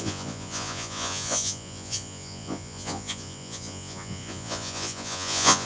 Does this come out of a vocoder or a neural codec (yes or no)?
yes